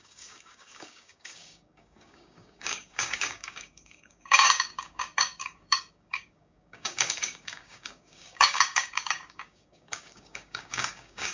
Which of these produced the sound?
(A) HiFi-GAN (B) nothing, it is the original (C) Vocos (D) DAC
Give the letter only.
D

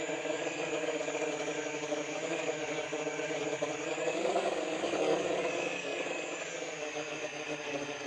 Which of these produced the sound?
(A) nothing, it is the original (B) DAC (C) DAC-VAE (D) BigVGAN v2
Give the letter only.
B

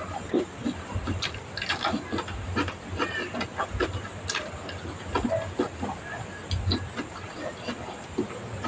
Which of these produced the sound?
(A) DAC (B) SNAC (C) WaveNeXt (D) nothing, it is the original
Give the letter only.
D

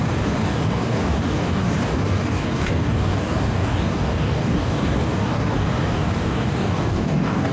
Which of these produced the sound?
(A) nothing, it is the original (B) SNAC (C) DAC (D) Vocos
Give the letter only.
C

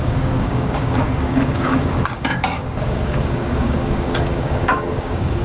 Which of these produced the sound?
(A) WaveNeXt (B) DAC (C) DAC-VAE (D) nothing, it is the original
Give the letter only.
B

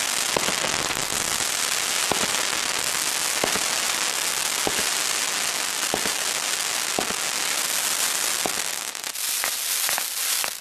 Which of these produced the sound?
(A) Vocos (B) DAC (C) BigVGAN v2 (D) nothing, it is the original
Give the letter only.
D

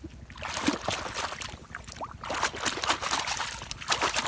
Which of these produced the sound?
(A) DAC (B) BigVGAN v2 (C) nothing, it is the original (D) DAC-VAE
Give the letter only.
C